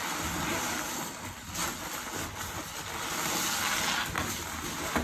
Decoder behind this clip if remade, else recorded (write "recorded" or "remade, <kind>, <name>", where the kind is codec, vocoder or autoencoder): recorded